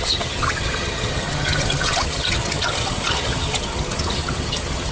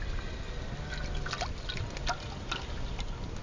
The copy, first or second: first